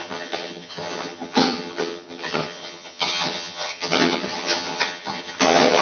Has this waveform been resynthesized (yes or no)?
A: yes